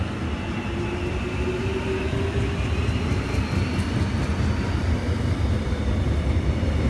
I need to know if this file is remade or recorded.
recorded